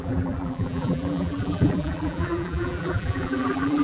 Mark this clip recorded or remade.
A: remade